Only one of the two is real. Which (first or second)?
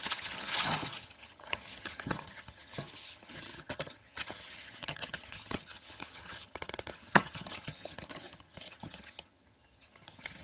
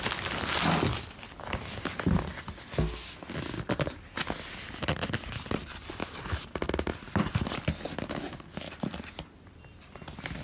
second